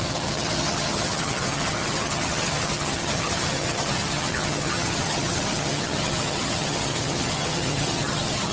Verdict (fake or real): fake